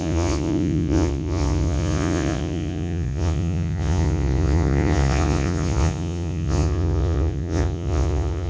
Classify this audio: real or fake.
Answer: fake